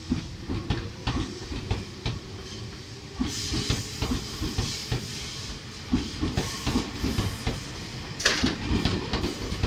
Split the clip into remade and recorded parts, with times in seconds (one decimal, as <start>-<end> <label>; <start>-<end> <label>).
0.0-4.8 recorded; 4.8-5.3 remade; 5.3-9.7 recorded